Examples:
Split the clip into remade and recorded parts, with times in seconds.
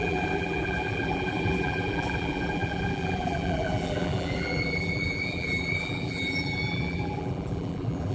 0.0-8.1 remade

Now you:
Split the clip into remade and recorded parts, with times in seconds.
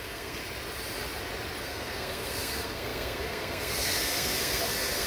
0.0-0.4 remade; 0.4-1.6 recorded; 1.6-5.1 remade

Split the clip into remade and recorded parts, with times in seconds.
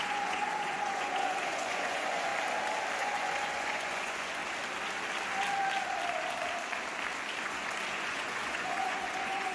0.0-2.3 remade; 2.3-3.0 recorded; 3.0-4.4 remade; 4.4-7.4 recorded; 7.4-9.5 remade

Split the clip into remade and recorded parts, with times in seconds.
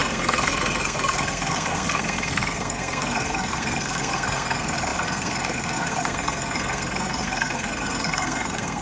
0.0-8.8 remade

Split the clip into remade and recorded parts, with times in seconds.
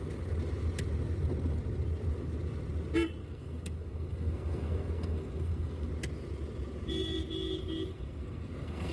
0.0-3.2 recorded; 3.2-5.9 remade; 5.9-7.9 recorded; 7.9-8.9 remade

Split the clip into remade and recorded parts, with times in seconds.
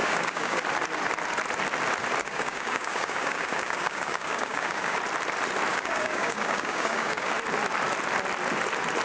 0.0-0.6 remade; 0.6-2.2 recorded; 2.2-5.0 remade; 5.0-5.7 recorded; 5.7-7.3 remade; 7.3-9.0 recorded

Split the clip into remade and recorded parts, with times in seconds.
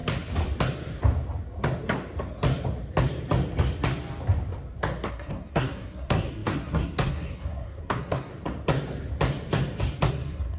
0.0-5.1 recorded; 5.1-8.3 remade; 8.3-10.1 recorded; 10.1-10.6 remade